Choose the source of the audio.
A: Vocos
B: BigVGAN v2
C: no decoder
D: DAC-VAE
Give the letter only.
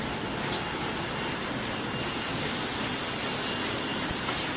C